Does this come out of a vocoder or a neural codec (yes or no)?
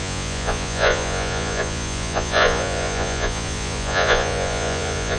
yes